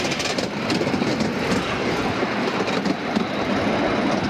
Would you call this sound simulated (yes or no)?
no